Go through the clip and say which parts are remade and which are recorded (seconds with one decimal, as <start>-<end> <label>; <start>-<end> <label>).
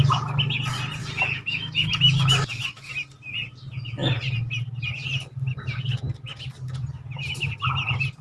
0.0-1.0 recorded; 1.0-2.9 remade; 2.9-8.2 recorded